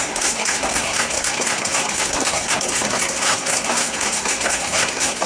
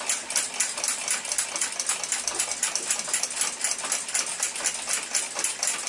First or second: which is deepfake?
first